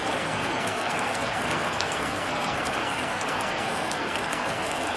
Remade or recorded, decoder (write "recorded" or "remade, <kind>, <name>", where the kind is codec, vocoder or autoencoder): remade, codec, SNAC